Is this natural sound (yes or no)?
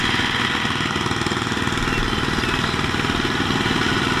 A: yes